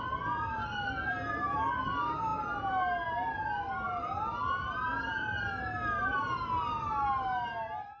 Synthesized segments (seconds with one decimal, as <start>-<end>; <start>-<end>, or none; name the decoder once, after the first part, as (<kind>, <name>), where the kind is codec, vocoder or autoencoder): none